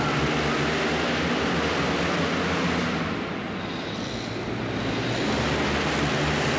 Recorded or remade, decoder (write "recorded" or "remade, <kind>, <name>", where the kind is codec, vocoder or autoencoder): recorded